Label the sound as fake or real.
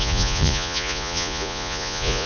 fake